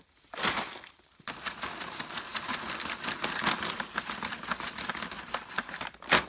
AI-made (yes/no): no